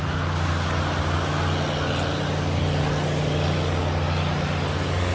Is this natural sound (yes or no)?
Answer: yes